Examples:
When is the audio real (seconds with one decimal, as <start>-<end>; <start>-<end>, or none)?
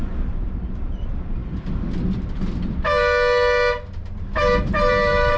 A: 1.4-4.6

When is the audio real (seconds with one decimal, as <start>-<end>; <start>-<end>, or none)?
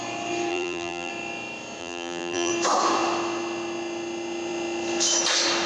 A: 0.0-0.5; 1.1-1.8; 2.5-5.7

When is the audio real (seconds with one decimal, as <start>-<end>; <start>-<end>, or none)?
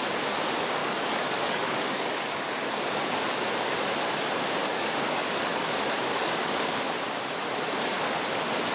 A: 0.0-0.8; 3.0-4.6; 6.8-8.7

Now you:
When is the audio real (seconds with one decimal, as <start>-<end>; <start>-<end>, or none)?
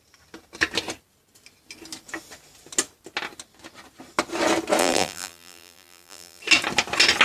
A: 0.0-4.8; 6.4-7.2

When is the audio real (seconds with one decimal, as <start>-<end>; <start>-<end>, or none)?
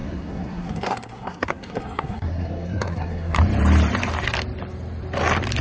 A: 3.4-5.6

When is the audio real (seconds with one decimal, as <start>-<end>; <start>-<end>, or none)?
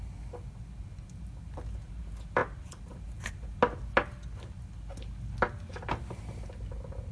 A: 0.0-7.1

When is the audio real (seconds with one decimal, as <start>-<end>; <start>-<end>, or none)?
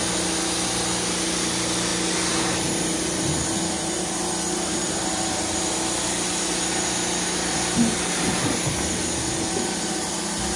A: 0.0-10.6